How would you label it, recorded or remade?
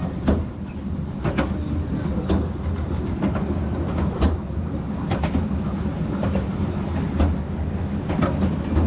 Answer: recorded